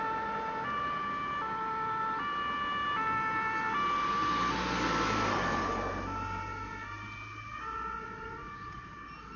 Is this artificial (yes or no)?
no